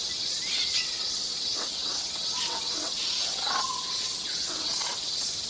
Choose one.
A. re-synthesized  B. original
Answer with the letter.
A